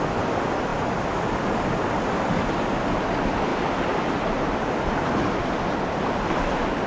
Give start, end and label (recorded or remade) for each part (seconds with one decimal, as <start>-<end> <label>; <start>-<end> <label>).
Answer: 0.0-6.9 recorded